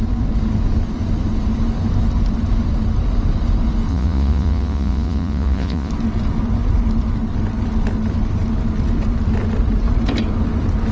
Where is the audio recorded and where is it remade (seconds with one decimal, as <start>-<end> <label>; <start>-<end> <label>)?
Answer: 0.0-3.9 recorded; 3.9-5.9 remade; 5.9-10.9 recorded